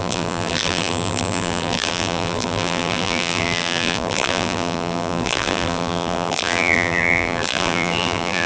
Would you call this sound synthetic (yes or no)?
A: yes